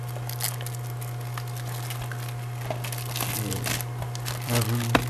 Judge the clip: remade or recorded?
recorded